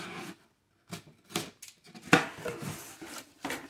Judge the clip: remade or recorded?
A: recorded